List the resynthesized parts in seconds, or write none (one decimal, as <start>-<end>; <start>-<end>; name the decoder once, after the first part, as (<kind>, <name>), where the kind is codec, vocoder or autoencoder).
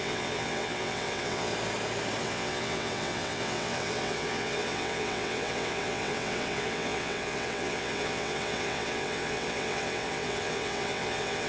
0.0-1.5 (vocoder, WaveNeXt); 2.2-11.5